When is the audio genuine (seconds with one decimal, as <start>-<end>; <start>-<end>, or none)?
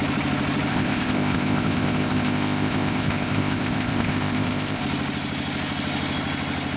0.0-0.7; 4.8-6.8